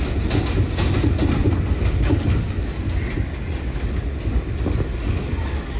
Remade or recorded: recorded